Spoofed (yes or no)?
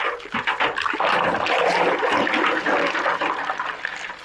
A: no